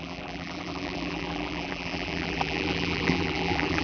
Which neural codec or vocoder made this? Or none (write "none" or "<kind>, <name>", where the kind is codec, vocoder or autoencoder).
vocoder, BigVGAN v2